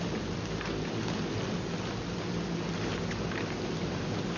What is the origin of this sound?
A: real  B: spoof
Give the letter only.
A